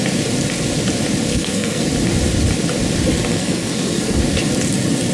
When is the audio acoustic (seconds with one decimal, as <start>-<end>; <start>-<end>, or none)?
0.0-1.3; 1.9-3.3; 4.2-5.1